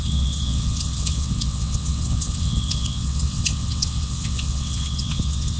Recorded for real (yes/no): no